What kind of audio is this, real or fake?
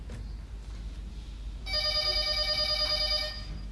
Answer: real